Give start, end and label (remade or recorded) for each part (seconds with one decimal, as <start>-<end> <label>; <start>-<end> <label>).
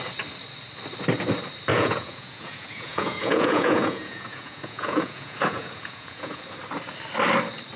0.0-1.7 recorded; 1.7-6.4 remade; 6.4-7.8 recorded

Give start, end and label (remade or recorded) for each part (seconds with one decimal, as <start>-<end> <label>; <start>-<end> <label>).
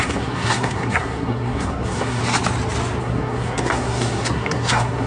0.0-2.2 remade; 2.2-3.0 recorded; 3.0-5.1 remade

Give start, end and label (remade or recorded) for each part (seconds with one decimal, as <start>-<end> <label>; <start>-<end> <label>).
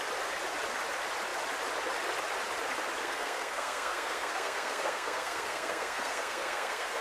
0.0-3.0 recorded; 3.0-7.0 remade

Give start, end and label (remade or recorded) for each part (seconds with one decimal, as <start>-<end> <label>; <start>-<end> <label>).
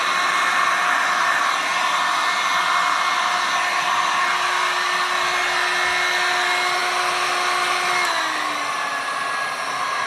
0.0-10.1 recorded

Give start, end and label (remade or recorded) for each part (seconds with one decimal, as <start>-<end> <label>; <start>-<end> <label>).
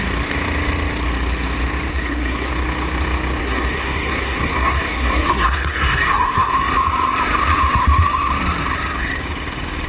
0.0-1.9 recorded; 1.9-2.5 remade; 2.5-3.4 recorded; 3.4-6.5 remade; 6.5-9.9 recorded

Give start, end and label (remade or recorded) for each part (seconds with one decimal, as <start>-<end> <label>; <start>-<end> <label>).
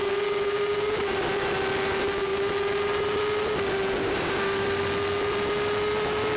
0.0-4.0 recorded; 4.0-4.8 remade; 4.8-6.4 recorded